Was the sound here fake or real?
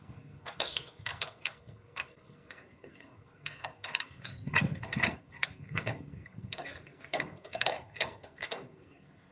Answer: fake